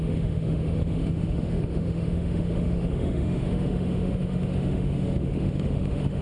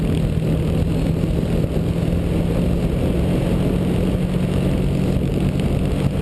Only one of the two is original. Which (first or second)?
second